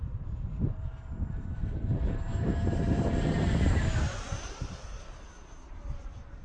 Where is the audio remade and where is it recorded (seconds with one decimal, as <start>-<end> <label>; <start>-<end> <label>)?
0.0-1.6 remade; 1.6-2.4 recorded; 2.4-4.3 remade; 4.3-5.7 recorded; 5.7-6.4 remade